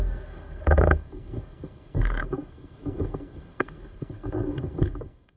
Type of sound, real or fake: fake